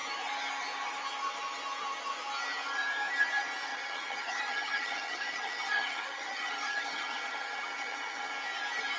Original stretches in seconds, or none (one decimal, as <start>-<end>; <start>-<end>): 0.0-3.7; 8.3-9.0